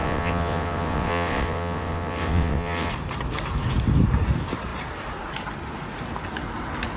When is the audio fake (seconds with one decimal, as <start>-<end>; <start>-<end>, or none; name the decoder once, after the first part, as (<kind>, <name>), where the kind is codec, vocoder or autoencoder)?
0.0-2.9 (vocoder, WaveNeXt)